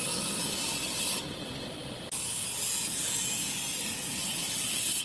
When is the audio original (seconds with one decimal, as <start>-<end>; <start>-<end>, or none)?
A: 0.0-5.0